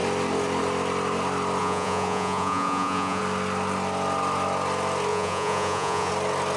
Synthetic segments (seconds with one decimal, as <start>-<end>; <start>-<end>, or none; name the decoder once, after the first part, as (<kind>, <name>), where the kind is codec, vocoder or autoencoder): 1.6-3.2 (vocoder, Vocos); 5.1-6.1